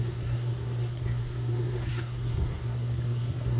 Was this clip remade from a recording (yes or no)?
yes